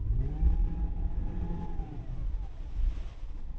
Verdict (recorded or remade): recorded